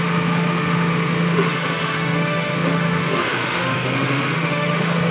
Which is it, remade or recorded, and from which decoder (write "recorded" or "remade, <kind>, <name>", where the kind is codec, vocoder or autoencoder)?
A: remade, autoencoder, DAC-VAE